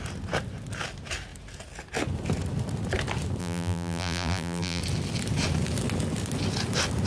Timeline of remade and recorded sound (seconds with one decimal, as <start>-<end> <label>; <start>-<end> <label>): 0.0-3.4 recorded; 3.4-4.8 remade; 4.8-7.1 recorded